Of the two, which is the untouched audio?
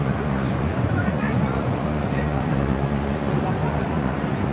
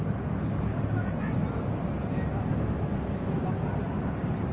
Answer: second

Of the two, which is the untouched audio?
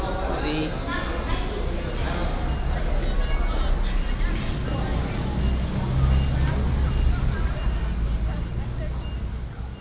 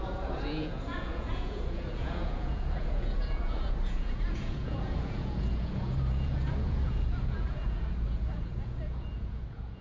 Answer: first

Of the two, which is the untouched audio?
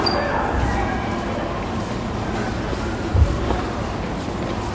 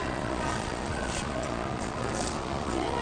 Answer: first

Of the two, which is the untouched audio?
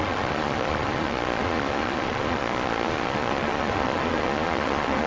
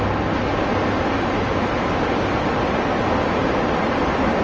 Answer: second